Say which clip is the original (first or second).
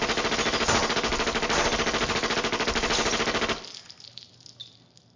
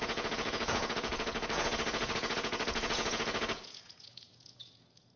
first